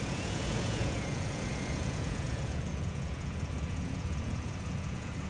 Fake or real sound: fake